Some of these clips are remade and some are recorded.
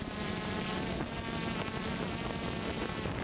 recorded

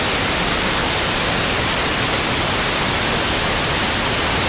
recorded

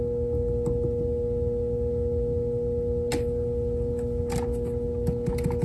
recorded